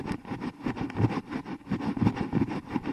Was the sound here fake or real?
real